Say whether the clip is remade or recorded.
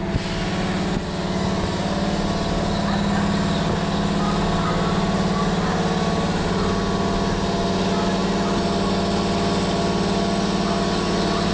recorded